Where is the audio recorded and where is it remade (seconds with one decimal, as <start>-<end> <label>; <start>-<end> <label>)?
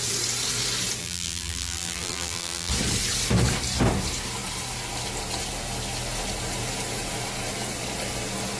0.0-1.0 recorded; 1.0-2.7 remade; 2.7-8.6 recorded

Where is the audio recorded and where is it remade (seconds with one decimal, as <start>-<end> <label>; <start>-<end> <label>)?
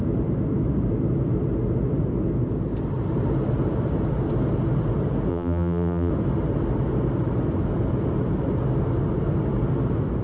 0.0-5.3 recorded; 5.3-6.1 remade; 6.1-10.2 recorded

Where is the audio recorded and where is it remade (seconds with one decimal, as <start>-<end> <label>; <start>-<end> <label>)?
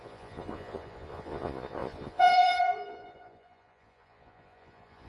0.0-5.1 remade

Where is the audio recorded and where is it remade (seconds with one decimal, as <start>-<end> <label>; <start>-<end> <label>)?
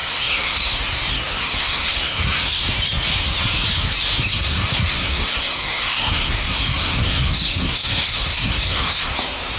0.0-0.6 remade; 0.6-1.1 recorded; 1.1-2.6 remade; 2.6-4.3 recorded; 4.3-9.1 remade; 9.1-9.6 recorded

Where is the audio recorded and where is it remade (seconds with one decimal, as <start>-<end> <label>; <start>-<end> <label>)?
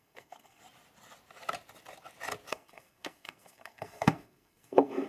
0.0-0.6 remade; 0.6-2.5 recorded; 2.5-5.1 remade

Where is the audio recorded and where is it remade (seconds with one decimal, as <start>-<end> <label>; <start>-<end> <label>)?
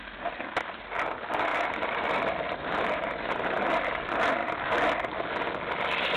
0.0-1.5 recorded; 1.5-3.2 remade; 3.2-6.2 recorded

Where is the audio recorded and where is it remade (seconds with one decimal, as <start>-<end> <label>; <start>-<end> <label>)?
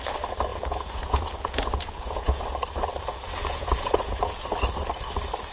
0.0-0.5 recorded; 0.5-2.4 remade; 2.4-3.4 recorded; 3.4-4.2 remade; 4.2-5.5 recorded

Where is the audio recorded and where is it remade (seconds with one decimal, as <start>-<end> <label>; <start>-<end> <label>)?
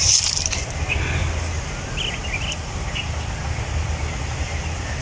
0.0-5.0 recorded